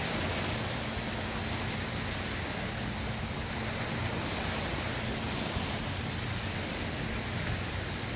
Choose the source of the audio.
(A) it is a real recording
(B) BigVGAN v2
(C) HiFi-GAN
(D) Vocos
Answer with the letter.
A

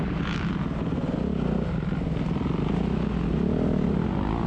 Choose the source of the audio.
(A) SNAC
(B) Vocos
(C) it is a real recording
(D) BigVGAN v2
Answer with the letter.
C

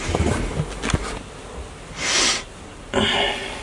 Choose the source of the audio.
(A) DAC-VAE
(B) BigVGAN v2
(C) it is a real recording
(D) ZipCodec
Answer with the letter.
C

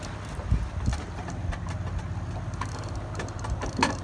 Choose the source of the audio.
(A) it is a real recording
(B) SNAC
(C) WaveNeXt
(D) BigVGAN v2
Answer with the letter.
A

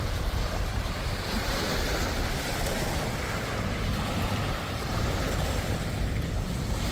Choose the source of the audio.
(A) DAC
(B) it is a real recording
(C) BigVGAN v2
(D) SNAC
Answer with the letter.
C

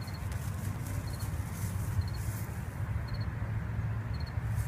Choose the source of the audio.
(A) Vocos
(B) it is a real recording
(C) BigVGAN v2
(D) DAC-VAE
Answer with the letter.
B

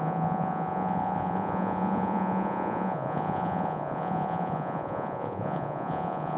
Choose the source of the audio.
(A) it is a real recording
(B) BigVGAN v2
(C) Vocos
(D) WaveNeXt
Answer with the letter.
C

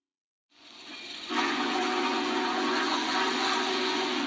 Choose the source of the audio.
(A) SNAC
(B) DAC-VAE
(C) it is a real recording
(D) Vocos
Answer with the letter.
D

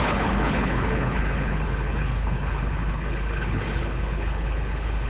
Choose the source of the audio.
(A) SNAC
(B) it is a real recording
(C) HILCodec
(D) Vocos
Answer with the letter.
C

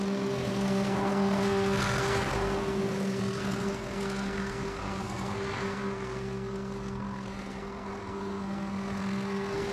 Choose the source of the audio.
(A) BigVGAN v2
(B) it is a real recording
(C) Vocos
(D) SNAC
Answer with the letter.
D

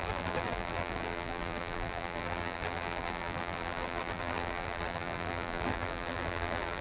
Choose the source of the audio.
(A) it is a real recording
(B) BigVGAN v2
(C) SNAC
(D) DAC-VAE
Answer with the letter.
B